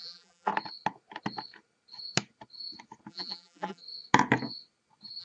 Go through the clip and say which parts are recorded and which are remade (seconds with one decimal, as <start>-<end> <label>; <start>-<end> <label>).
0.0-0.5 remade; 0.5-3.1 recorded; 3.1-3.8 remade; 3.8-5.2 recorded